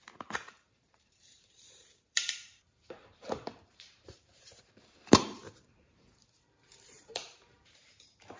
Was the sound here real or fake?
fake